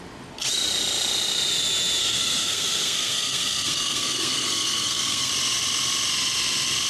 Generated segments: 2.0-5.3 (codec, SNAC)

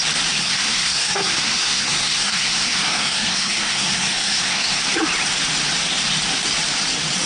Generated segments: 0.4-4.8 (codec, SNAC)